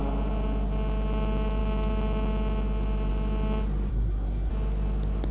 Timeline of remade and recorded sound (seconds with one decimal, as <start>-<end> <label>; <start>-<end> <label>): 0.0-3.9 recorded; 3.9-4.5 remade; 4.5-5.3 recorded